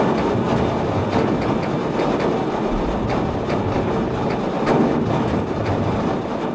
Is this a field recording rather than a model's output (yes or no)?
yes